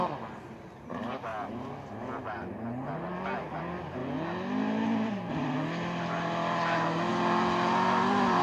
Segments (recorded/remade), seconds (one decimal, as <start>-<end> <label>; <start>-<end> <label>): 0.0-8.4 recorded